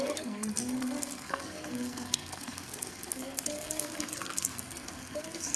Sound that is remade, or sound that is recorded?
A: remade